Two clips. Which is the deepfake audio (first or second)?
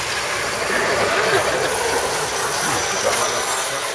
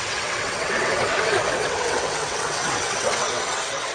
second